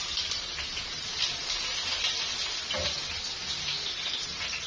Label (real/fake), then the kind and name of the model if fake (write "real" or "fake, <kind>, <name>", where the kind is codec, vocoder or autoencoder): real